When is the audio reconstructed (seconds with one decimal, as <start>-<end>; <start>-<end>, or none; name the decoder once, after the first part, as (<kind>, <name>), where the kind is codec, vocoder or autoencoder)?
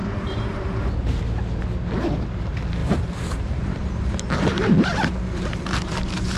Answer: 0.0-1.2 (vocoder, BigVGAN v2); 2.8-4.7